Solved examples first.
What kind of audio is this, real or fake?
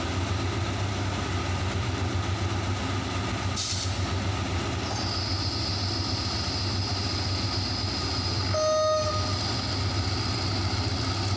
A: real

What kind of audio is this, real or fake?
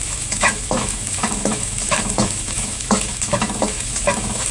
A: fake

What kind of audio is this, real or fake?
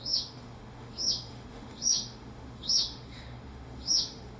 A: fake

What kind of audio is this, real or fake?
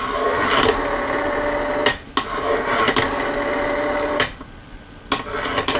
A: real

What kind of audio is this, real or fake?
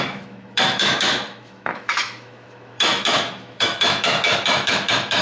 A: fake